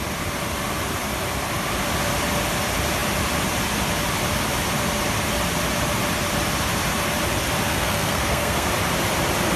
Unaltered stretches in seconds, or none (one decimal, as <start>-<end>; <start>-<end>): 0.0-7.7; 8.7-9.6